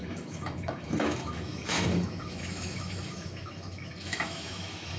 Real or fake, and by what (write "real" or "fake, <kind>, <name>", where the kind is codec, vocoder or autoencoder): fake, autoencoder, DAC-VAE